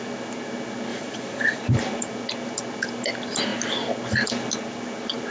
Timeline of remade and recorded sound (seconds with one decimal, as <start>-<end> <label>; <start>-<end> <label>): 0.0-0.9 recorded; 0.9-1.6 remade; 1.6-5.3 recorded